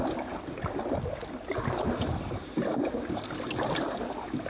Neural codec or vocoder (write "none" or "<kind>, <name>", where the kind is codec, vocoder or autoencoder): none